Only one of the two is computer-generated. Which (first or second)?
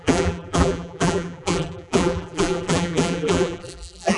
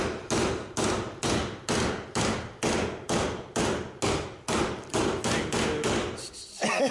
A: first